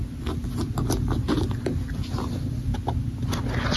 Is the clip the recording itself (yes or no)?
yes